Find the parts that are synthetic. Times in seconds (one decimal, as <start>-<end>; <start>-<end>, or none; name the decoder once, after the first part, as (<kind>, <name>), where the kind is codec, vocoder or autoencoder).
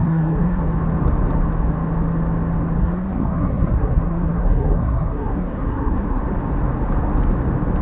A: 0.0-0.6 (codec, SNAC); 2.8-6.2